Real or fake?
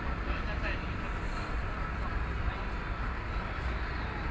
real